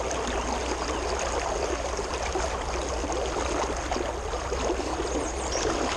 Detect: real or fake real